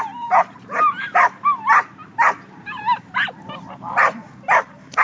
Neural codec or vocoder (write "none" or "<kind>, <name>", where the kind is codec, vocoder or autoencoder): vocoder, BigVGAN v2